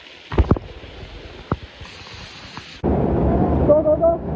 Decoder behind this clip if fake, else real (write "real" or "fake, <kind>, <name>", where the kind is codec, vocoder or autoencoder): real